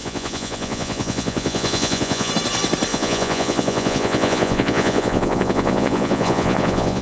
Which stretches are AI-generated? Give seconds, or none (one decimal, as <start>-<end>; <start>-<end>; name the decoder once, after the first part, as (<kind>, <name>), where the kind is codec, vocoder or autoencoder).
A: 0.0-2.3 (vocoder, Vocos); 2.9-7.0